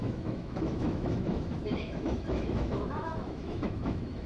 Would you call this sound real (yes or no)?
no